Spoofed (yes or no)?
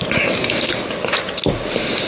no